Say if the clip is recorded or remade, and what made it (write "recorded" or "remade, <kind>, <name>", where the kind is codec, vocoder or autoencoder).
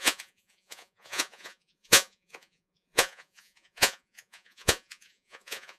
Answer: remade, vocoder, Vocos